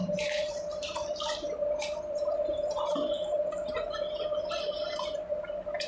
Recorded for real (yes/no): no